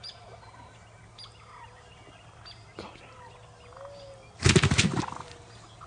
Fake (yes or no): no